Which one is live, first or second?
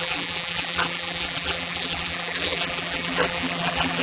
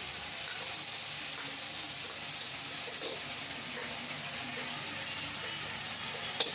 second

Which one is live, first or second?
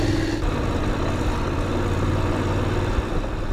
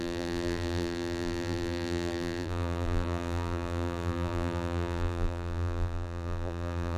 first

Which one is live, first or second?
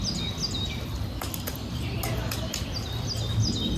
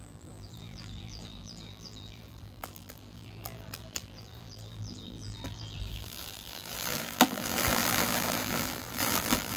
first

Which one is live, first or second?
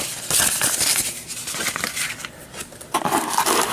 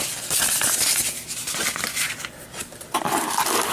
second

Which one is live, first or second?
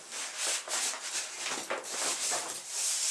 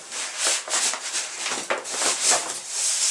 first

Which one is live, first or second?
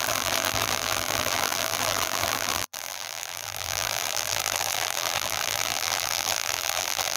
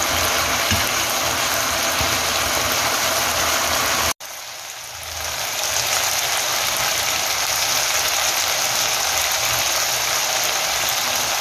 second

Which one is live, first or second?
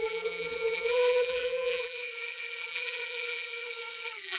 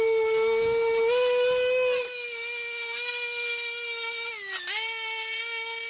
second